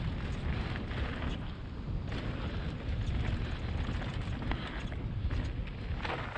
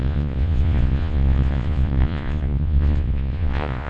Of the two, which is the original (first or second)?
first